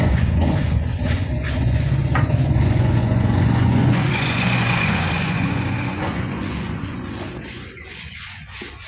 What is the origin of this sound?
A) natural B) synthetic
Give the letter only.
B